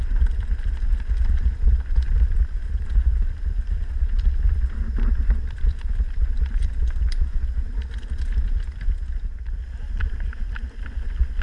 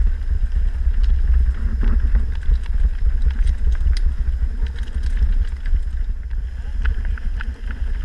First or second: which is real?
second